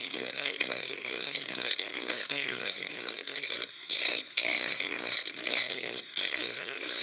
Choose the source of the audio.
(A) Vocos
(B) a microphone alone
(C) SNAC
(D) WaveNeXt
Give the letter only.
C